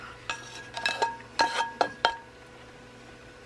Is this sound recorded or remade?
recorded